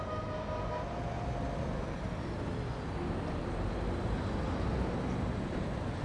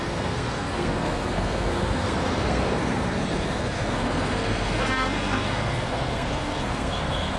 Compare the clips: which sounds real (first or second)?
first